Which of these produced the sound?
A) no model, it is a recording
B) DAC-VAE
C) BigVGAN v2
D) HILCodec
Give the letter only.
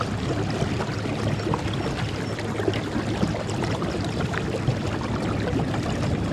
A